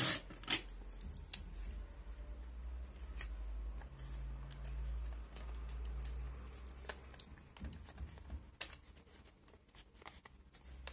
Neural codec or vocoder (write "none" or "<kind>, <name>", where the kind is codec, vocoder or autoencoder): none